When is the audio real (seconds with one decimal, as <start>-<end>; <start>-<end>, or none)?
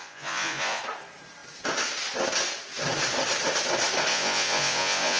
0.8-4.1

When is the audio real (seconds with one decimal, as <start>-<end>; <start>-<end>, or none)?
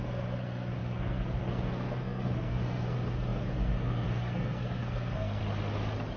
5.4-6.2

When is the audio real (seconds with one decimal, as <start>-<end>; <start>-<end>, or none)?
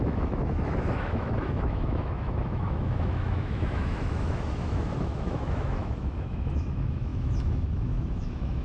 none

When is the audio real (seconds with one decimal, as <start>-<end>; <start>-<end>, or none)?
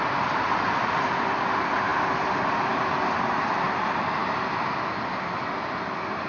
0.0-6.3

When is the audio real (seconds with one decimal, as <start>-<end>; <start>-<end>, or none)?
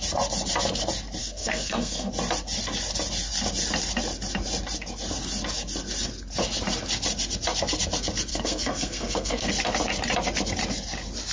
0.0-1.2; 2.1-8.3; 9.5-11.3